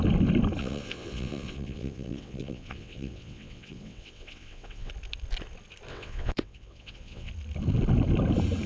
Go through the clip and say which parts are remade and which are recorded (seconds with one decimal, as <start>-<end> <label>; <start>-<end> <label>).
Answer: 0.0-0.6 recorded; 0.6-4.9 remade; 4.9-5.9 recorded; 5.9-7.3 remade; 7.3-8.7 recorded